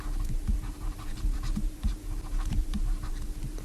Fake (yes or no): yes